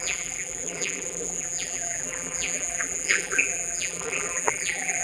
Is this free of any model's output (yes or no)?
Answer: no